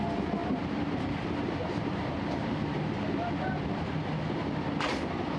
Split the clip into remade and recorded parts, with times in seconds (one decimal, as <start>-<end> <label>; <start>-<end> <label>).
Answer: 0.0-0.4 recorded; 0.4-3.4 remade; 3.4-5.4 recorded